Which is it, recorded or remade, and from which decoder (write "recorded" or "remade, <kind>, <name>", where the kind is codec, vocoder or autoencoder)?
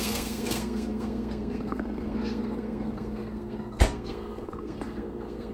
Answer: remade, codec, SNAC